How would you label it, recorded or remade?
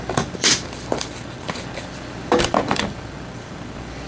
remade